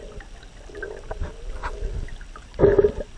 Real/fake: real